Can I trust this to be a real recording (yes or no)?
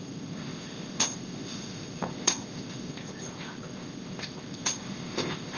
no